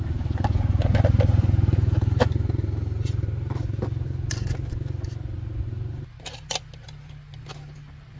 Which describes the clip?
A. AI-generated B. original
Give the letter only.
B